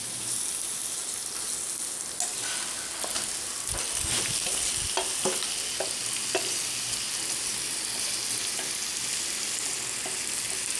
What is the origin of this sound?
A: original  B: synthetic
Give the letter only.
A